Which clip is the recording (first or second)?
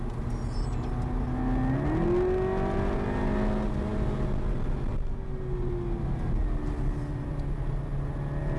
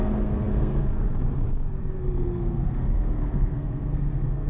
first